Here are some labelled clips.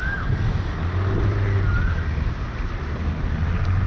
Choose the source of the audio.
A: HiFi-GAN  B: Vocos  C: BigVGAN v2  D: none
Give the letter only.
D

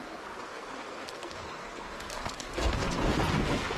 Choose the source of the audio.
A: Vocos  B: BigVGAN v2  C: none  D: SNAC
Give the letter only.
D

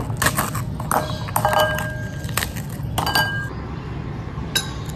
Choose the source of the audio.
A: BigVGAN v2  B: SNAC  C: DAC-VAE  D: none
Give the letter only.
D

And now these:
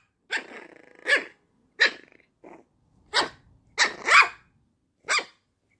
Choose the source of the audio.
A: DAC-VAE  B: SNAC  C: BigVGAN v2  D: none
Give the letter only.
D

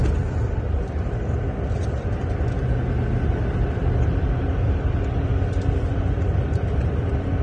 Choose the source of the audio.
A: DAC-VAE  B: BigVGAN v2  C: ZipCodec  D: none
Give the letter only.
D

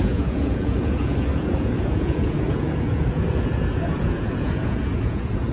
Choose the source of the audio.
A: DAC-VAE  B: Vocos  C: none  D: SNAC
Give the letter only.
B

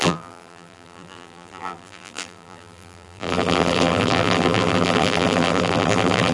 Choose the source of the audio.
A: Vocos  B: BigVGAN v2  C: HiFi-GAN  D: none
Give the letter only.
B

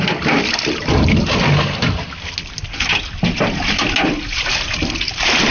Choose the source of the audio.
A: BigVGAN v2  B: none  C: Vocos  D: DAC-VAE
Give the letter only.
B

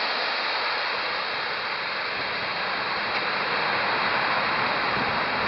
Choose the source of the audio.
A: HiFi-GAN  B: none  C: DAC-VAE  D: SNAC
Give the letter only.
B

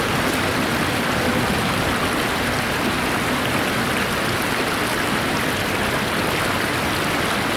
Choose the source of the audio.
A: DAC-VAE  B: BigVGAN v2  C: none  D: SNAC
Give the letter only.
C